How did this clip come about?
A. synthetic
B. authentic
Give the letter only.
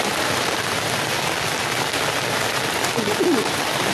A